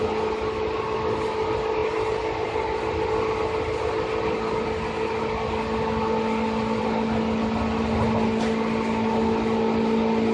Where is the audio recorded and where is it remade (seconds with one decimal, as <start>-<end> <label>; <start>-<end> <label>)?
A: 0.0-10.3 recorded